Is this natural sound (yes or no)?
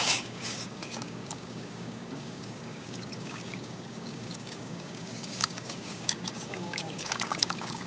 no